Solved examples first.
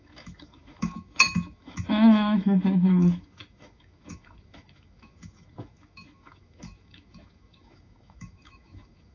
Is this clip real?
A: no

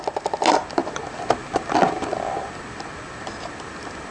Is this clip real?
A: yes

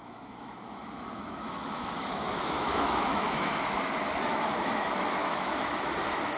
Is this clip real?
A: no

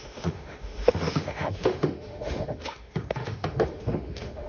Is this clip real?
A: no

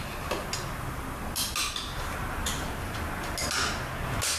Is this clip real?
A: yes